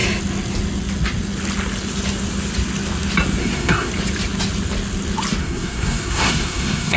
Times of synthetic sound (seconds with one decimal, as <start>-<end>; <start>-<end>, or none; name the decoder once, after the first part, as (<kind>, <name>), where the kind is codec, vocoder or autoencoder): 3.4-3.9 (codec, SNAC); 5.4-7.0